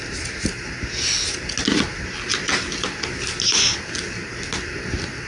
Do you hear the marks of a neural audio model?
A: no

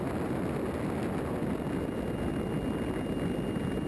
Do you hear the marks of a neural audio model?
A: no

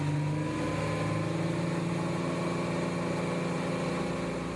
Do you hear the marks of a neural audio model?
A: no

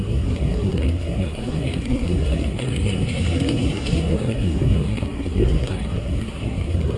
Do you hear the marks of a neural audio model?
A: yes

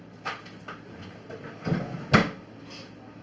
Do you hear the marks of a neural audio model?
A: no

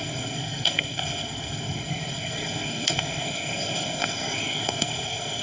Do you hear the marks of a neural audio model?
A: yes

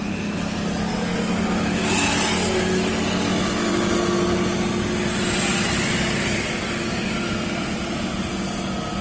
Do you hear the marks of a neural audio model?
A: no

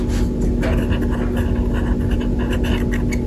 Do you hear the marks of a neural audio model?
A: no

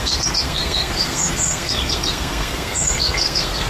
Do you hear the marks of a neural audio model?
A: yes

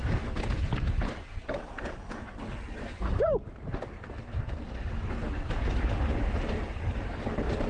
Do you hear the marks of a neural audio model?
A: no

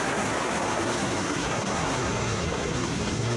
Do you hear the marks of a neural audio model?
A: yes